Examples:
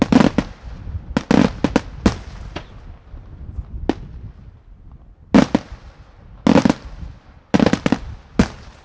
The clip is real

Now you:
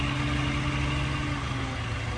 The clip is real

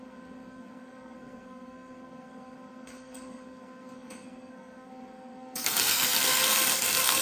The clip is fake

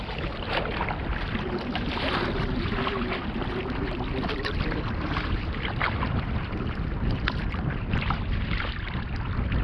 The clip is real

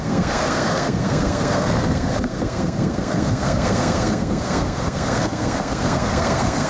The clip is fake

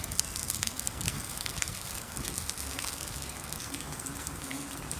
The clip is fake